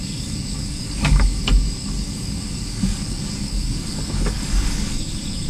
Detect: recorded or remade remade